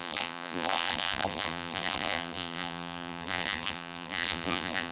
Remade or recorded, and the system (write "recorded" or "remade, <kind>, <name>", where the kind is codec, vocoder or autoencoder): remade, vocoder, BigVGAN v2